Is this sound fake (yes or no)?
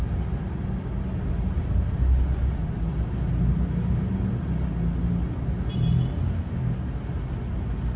no